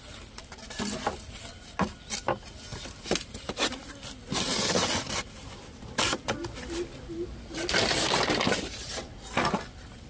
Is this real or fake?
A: real